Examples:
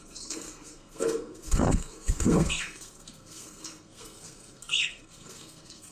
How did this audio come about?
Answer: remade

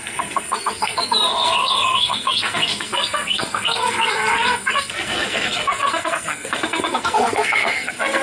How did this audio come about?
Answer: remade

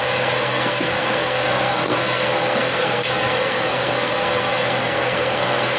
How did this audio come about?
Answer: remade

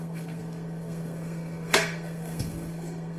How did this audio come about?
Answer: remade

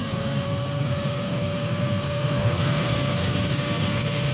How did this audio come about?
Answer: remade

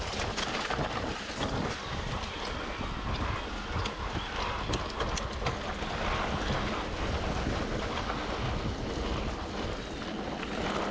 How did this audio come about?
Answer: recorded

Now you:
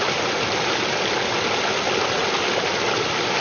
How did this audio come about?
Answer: recorded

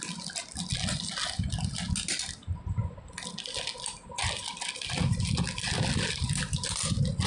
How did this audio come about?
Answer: recorded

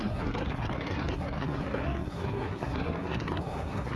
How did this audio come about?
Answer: remade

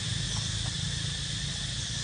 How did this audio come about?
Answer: recorded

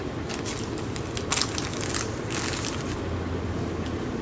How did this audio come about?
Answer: recorded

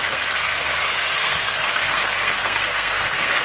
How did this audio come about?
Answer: remade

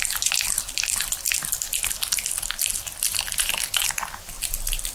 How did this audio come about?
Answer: recorded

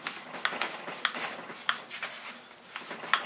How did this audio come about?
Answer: recorded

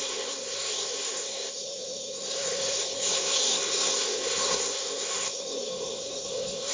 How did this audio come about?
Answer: remade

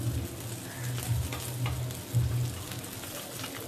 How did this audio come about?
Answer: recorded